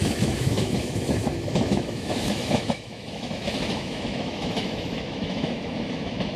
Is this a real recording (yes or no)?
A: no